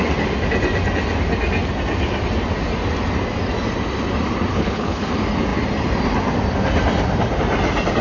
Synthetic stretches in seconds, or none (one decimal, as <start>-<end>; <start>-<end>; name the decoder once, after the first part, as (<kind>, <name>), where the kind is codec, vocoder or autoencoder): 4.5-5.1 (codec, HILCodec)